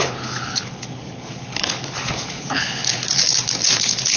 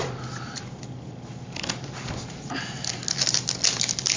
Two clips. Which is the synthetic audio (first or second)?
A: first